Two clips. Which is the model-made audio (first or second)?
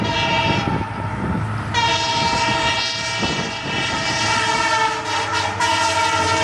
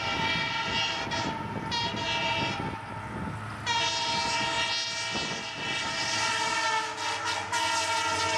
first